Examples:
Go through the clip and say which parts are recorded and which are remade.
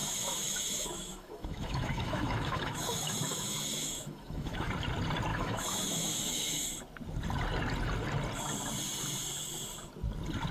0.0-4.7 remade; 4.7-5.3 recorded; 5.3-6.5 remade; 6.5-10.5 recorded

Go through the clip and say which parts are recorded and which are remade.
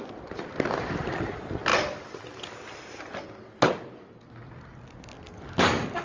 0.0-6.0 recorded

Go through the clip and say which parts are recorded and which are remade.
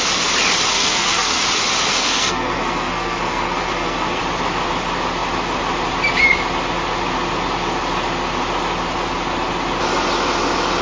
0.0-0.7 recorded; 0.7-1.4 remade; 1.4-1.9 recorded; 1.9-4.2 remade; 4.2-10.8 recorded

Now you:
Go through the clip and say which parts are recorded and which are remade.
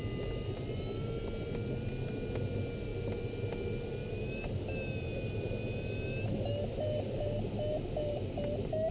0.0-8.9 recorded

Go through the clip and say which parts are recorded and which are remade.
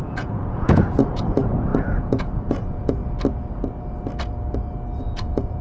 0.0-3.0 remade; 3.0-5.0 recorded; 5.0-5.6 remade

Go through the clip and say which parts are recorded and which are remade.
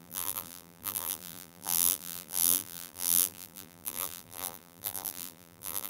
0.0-5.9 remade